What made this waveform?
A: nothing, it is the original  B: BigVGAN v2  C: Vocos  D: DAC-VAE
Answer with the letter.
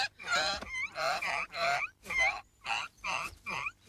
B